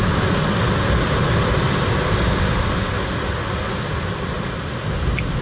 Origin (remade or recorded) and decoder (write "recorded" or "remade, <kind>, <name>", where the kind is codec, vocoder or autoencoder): recorded